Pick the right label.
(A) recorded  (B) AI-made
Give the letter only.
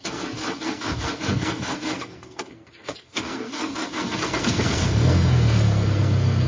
B